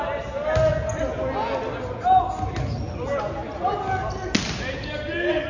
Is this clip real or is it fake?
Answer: real